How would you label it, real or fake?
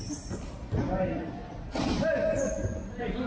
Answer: real